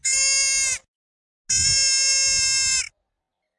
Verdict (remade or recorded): recorded